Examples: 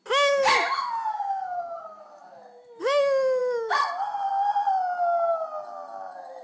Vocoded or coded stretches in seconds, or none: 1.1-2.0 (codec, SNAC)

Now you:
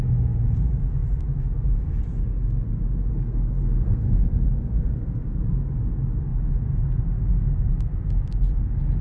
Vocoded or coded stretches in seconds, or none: 3.1-4.2 (codec, SNAC)